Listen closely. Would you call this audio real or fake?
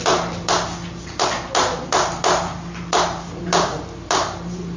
real